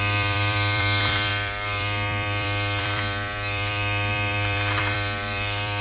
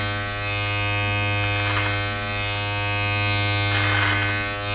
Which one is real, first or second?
second